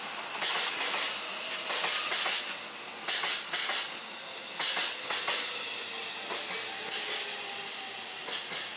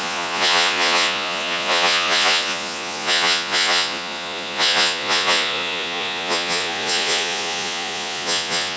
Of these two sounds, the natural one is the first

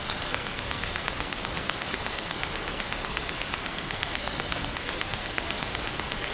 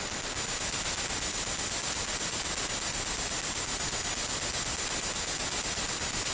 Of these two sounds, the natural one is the second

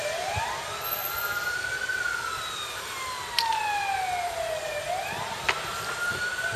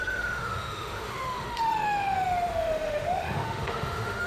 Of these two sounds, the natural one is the first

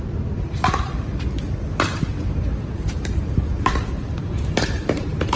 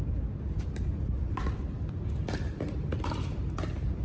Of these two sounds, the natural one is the second